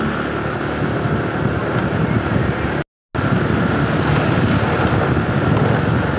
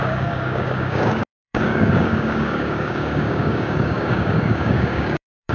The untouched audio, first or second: first